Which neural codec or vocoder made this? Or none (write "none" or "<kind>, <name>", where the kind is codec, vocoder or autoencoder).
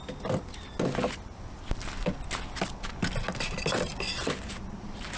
none